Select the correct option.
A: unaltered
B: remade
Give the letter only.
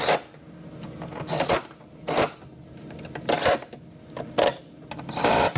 A